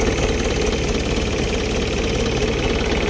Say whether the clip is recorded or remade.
recorded